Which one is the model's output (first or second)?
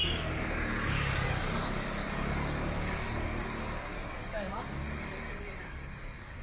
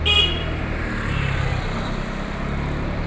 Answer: first